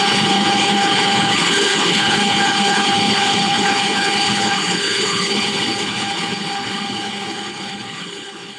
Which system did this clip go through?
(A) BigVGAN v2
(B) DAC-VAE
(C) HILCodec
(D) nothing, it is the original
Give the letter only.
C